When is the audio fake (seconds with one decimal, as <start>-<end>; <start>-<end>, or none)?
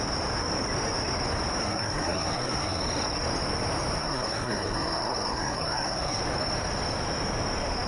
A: 1.6-2.8; 4.0-6.2